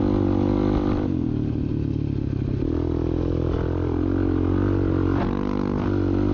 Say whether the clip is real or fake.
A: real